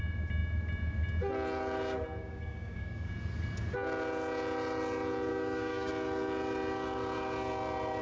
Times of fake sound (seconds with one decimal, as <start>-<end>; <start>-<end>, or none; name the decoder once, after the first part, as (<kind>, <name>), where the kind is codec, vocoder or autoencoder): 2.2-3.1 (codec, DAC); 5.3-5.9